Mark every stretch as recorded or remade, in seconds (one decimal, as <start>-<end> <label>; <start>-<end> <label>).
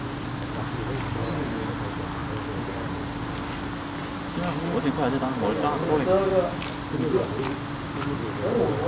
0.0-8.9 recorded